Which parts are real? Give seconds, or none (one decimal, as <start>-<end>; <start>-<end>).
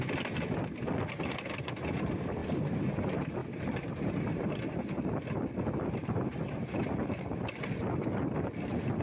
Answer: 3.4-4.8